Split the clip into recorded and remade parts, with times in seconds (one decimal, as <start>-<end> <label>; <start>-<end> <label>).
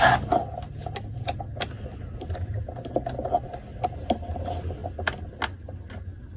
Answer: 0.0-6.4 recorded